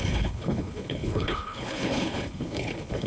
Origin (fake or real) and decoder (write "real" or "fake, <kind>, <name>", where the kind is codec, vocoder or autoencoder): fake, codec, HILCodec